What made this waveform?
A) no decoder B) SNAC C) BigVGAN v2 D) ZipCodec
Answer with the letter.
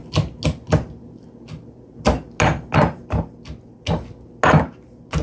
A